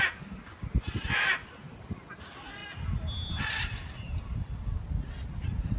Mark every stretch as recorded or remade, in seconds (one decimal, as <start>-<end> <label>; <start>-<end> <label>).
0.0-5.8 recorded